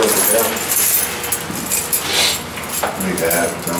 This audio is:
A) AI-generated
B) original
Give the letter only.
B